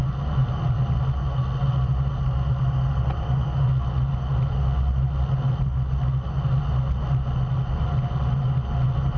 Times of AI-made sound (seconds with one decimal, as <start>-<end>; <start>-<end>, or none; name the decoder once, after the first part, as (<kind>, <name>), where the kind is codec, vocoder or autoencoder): 0.4-1.0 (vocoder, BigVGAN v2)